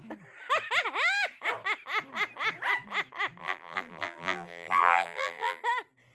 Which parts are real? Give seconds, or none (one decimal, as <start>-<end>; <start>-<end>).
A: 0.0-3.4; 5.6-6.1